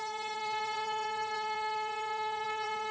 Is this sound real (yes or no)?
no